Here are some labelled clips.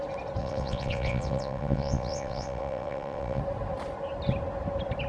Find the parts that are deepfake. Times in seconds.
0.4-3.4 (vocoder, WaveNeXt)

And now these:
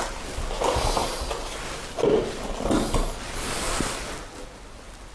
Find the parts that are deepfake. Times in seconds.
none